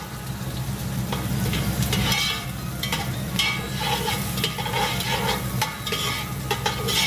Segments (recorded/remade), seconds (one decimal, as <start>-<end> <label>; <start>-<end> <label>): 0.0-7.1 recorded